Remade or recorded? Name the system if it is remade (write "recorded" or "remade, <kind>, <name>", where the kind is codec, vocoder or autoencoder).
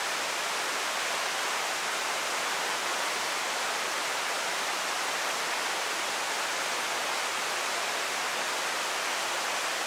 recorded